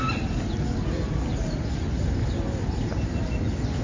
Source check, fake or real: real